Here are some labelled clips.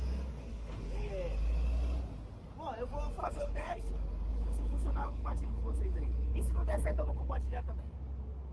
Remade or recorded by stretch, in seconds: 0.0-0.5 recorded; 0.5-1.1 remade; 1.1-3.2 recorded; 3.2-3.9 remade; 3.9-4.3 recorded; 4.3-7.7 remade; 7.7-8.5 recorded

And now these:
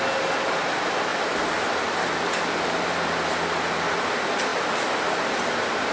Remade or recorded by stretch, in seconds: 0.0-5.9 recorded

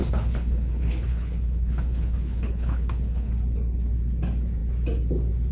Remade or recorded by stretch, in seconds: 0.0-3.3 remade; 3.3-5.5 recorded

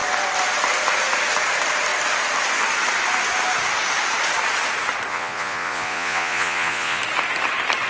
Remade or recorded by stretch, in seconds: 0.0-5.1 recorded; 5.1-7.0 remade; 7.0-7.9 recorded

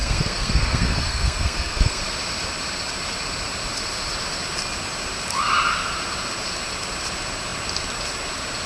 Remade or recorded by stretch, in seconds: 0.0-2.0 remade; 2.0-8.7 recorded

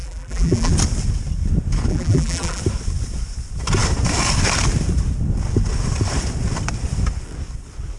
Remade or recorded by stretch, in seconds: 0.0-0.7 remade; 0.7-1.9 recorded; 1.9-2.6 remade; 2.6-8.0 recorded

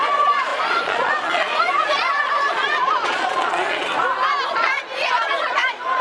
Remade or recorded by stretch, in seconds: 0.0-3.9 remade; 3.9-4.5 recorded; 4.5-6.0 remade

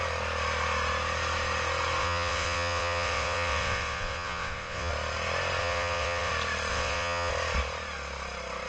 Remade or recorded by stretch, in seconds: 0.0-2.0 recorded; 2.0-4.9 remade; 4.9-5.6 recorded; 5.6-6.3 remade; 6.3-6.7 recorded; 6.7-7.3 remade; 7.3-8.7 recorded